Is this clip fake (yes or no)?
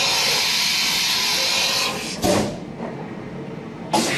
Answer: no